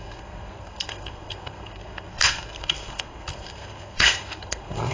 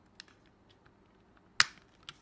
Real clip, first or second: second